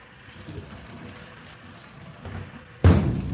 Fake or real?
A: real